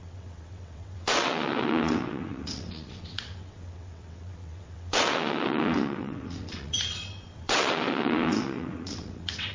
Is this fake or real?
fake